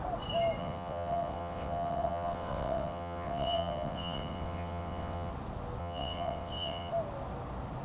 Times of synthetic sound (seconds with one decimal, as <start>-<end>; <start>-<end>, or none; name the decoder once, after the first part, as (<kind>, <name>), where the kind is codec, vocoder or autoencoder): 0.6-5.3 (vocoder, WaveNeXt); 5.8-6.9